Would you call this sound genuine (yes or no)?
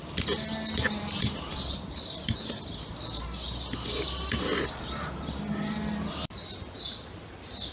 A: yes